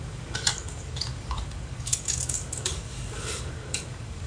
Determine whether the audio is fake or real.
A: fake